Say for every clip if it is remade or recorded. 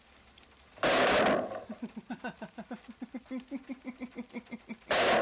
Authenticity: recorded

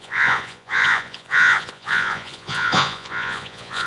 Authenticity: remade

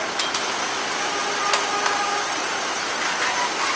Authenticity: recorded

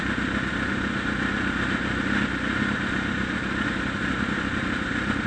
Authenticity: recorded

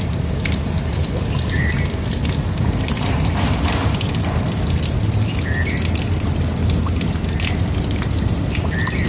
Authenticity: recorded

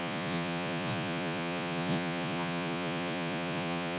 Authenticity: remade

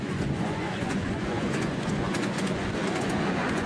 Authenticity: remade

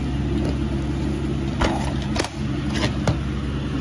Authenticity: recorded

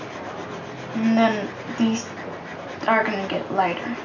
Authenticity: recorded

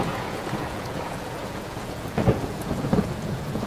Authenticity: remade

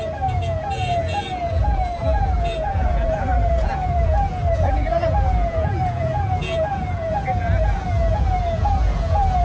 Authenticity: remade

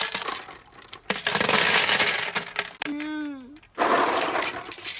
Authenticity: recorded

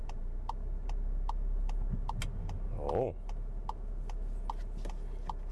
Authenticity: recorded